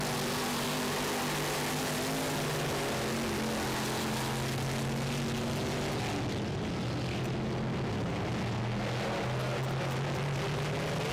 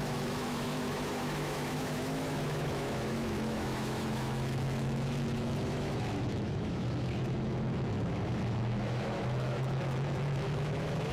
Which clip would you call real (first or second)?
first